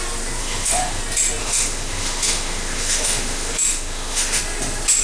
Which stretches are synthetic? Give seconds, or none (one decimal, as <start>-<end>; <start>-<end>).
0.4-1.0; 1.4-4.4

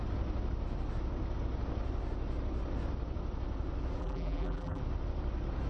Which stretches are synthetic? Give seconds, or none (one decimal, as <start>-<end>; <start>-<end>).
4.0-4.8

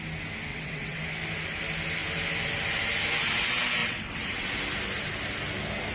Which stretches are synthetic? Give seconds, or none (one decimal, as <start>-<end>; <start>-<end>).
0.5-1.0; 3.8-4.5

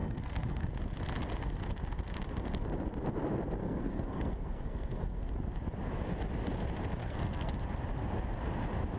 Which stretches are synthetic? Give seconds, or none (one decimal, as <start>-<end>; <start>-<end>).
0.0-0.7; 3.6-5.3; 7.0-7.5

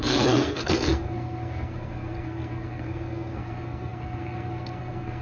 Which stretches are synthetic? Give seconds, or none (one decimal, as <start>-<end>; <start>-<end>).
0.0-5.2

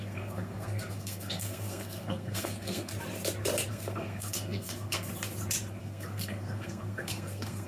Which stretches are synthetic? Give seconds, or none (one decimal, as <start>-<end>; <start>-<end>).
0.0-2.9; 3.7-5.1; 5.8-7.7

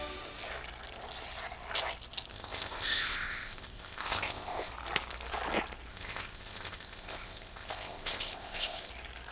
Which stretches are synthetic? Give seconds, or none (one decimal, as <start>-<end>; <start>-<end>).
2.3-4.7; 5.9-8.9

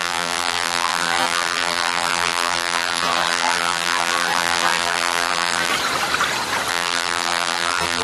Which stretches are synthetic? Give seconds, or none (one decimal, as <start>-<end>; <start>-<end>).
0.0-5.7; 6.7-8.0